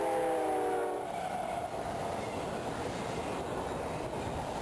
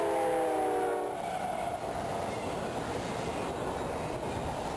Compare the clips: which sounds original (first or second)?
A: second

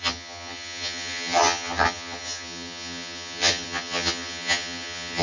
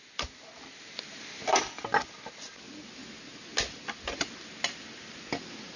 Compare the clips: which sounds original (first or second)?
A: second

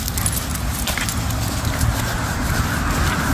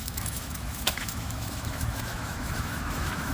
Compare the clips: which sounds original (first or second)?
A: first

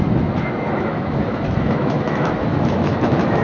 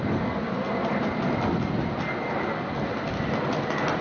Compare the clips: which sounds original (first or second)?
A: second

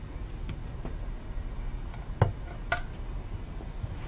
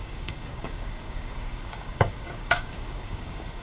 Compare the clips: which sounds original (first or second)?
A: first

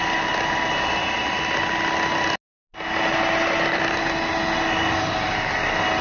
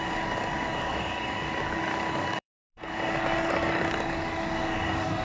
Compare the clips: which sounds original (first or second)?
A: first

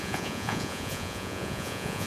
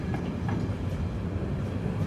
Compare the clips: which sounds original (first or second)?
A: second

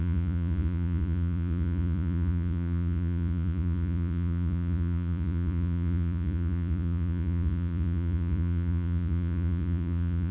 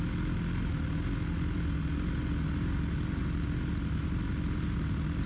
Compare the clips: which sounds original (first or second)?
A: second